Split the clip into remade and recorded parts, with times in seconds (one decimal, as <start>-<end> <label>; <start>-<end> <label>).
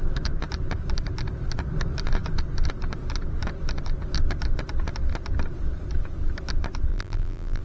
0.0-6.9 recorded; 6.9-7.6 remade